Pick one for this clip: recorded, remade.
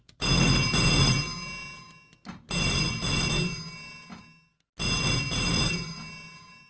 recorded